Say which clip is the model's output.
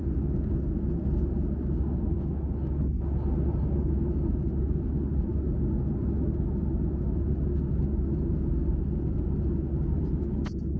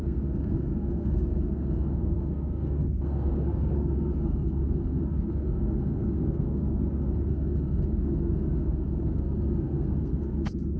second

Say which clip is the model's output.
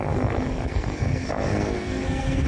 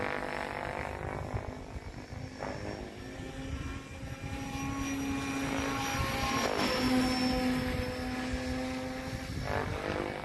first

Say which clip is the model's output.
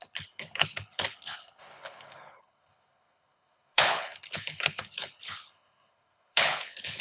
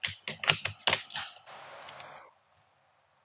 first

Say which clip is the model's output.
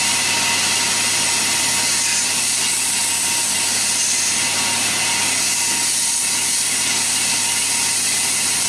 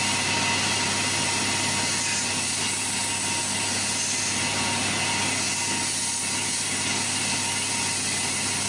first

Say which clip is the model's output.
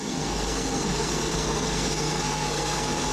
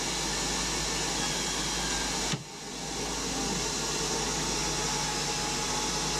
first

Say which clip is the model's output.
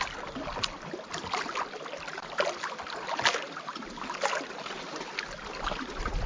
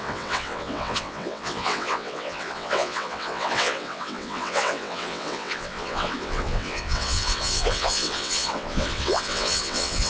second